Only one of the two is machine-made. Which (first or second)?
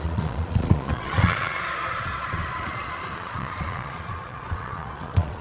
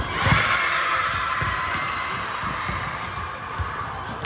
first